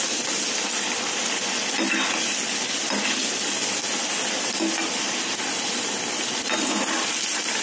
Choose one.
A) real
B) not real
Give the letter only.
A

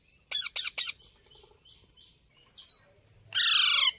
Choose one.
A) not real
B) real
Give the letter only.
B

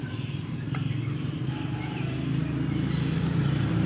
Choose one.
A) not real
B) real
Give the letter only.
A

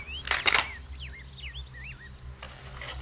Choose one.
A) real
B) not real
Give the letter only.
A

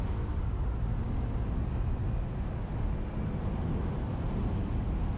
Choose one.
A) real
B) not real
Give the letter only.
A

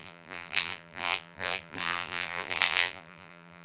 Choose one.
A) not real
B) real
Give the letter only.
A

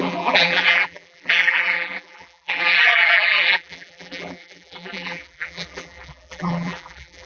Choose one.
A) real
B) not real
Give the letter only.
B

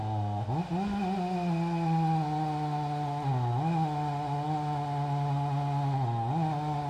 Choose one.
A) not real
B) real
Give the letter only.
B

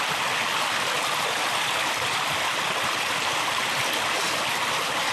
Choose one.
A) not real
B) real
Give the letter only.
B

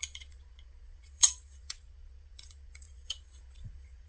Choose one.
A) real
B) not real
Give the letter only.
B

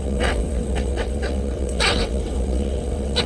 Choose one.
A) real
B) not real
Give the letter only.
B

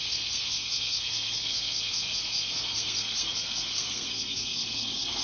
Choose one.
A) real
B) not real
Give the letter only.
B